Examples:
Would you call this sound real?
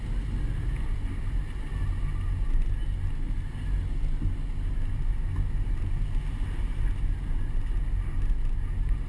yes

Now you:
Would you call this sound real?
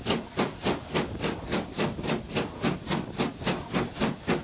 yes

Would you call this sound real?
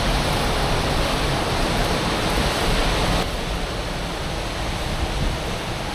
yes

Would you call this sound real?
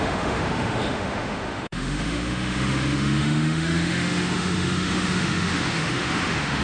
no